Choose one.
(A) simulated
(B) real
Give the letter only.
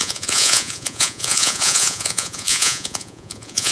A